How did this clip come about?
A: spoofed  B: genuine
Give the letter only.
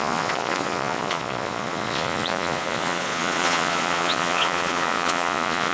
A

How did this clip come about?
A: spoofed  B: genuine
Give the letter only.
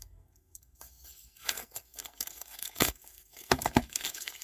A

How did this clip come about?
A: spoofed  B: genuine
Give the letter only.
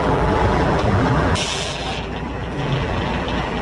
A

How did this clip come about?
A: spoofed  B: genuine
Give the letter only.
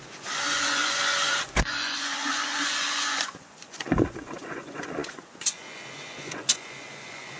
A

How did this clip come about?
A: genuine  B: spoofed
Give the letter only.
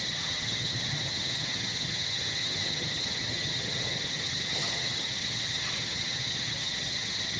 B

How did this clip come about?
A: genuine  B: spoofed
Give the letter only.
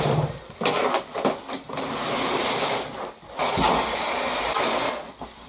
A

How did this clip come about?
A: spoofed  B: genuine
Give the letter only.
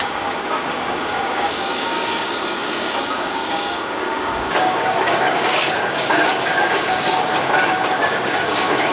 A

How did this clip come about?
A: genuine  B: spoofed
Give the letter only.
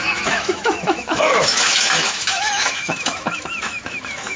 B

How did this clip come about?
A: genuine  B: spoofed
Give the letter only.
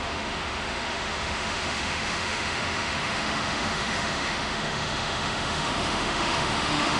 B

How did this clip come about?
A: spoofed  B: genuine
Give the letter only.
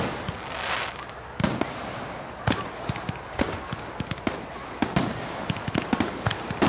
B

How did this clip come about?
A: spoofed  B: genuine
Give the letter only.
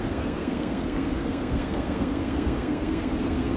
A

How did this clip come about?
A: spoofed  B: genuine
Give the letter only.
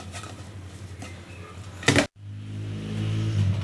B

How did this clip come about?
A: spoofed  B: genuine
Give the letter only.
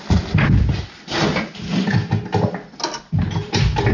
B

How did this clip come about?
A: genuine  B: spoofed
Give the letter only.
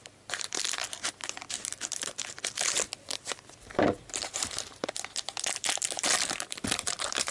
B